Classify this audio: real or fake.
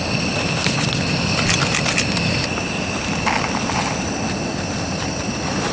real